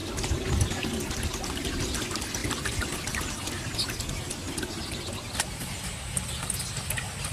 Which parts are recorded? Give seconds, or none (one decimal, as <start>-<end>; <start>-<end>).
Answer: 0.0-2.4; 3.3-7.3